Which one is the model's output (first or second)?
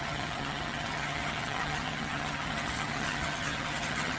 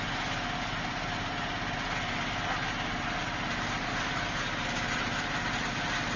first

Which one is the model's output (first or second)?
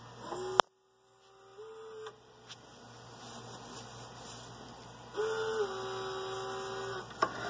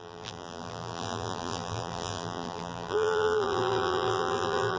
second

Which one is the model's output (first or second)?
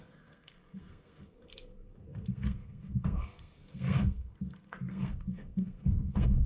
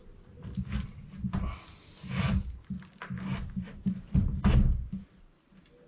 first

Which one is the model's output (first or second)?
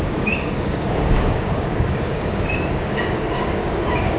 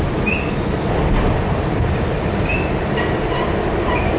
first